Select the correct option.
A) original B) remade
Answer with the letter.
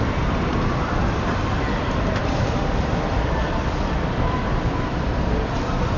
B